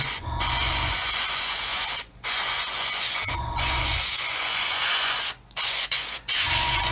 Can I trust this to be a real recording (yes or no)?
no